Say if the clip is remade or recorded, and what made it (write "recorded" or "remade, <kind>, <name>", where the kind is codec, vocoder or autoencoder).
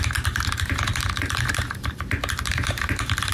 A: remade, vocoder, BigVGAN v2